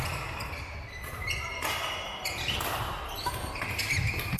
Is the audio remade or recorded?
recorded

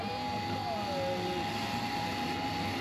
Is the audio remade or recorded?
recorded